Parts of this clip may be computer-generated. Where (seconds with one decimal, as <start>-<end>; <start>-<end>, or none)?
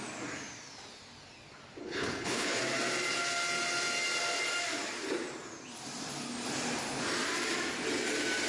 1.8-2.6